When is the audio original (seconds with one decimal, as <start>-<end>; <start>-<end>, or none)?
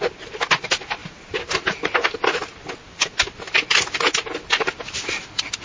0.0-5.6